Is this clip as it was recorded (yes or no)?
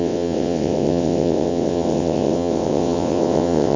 no